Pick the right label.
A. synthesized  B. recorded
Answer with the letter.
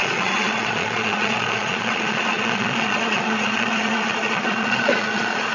A